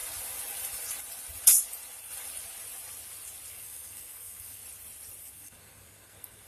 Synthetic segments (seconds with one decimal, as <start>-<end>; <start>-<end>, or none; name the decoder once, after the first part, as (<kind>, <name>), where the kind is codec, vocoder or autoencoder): 3.5-4.6 (codec, SNAC); 5.2-6.5